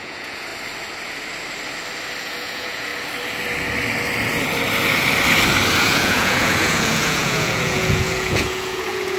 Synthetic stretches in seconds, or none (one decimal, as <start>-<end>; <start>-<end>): 0.0-0.5; 2.2-2.9; 5.8-9.2